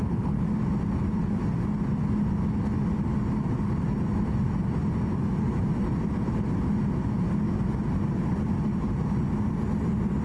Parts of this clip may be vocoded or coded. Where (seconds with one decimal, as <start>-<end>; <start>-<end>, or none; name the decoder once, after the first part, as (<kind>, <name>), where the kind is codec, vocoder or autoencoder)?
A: none